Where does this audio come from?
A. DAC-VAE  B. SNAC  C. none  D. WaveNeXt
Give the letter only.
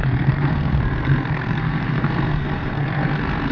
B